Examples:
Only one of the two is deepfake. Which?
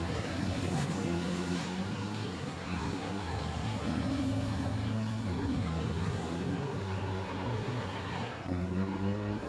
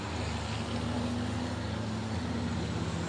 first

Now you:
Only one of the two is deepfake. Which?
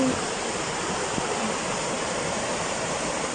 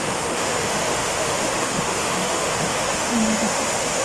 second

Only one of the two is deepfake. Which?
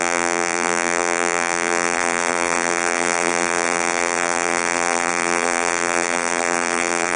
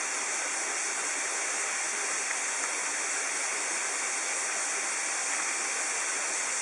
first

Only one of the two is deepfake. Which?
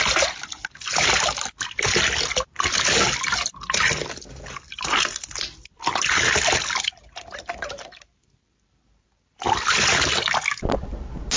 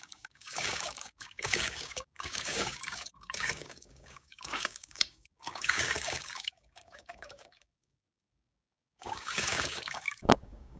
second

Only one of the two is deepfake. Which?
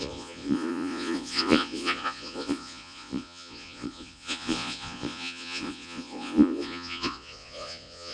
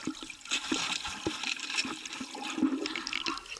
first